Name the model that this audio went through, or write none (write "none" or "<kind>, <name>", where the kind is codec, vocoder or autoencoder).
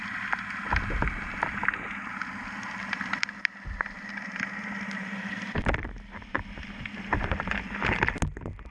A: none